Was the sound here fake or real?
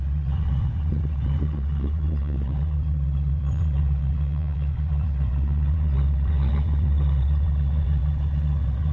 fake